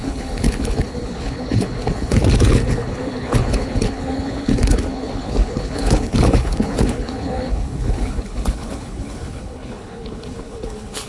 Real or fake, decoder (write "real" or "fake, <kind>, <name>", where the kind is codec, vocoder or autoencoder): fake, codec, HILCodec